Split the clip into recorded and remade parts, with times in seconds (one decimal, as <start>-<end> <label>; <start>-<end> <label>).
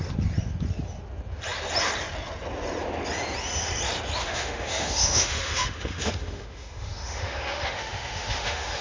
0.0-4.2 recorded; 4.2-8.8 remade